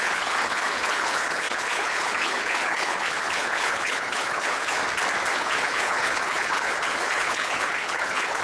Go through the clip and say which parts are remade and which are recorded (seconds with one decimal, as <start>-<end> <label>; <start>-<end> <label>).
0.0-4.8 remade; 4.8-5.3 recorded; 5.3-8.4 remade